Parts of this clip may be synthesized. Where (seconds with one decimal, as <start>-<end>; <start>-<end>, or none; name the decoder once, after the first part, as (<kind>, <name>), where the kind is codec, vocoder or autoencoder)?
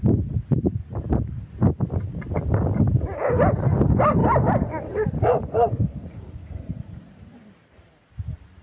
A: 0.7-1.3 (vocoder, BigVGAN v2); 4.2-8.1